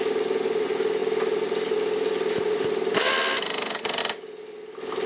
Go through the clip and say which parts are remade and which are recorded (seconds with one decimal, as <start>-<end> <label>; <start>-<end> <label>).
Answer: 0.0-5.1 recorded